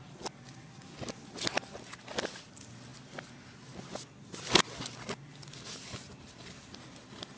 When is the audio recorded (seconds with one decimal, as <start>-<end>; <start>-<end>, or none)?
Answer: 0.0-7.4